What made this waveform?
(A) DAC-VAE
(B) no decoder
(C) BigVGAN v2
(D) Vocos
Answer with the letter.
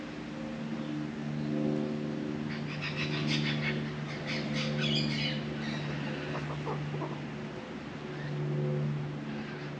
B